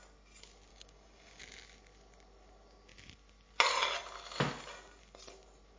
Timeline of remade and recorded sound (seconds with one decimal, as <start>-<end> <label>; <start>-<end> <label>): 0.0-0.7 recorded; 0.7-1.4 remade; 1.4-5.8 recorded